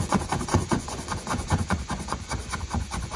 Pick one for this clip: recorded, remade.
remade